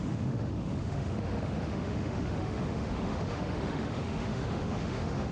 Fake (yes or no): yes